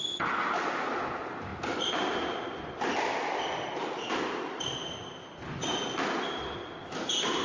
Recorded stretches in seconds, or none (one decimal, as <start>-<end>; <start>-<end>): 0.0-7.4

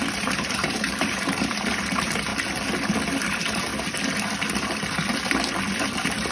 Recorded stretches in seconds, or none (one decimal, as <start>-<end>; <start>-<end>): 2.3-3.2; 3.7-6.3

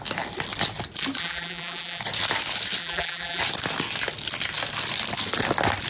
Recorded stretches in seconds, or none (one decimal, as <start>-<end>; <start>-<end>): 0.0-1.2; 2.0-2.8; 3.4-5.9

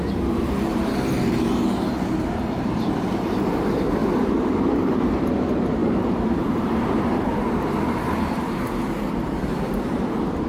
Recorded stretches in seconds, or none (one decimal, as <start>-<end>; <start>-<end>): 0.0-0.7; 3.5-4.0; 5.0-5.8; 6.6-10.5

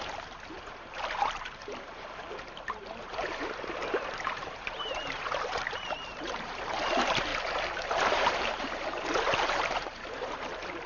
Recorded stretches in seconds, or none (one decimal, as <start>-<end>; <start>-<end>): 7.3-8.0

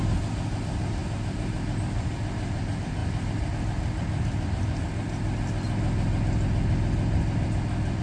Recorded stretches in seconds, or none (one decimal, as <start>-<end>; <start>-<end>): 0.0-8.0

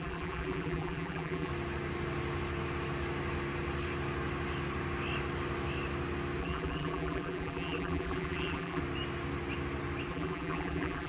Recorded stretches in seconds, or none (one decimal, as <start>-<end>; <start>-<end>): 1.5-6.4; 8.8-10.1